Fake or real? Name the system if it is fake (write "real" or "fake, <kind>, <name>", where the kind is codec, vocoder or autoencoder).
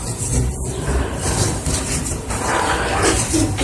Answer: real